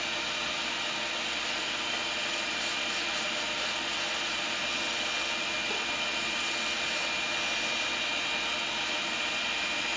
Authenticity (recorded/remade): recorded